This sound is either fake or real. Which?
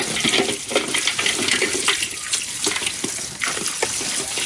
real